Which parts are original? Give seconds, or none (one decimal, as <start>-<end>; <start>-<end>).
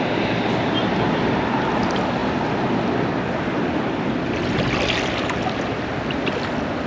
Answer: 0.0-6.9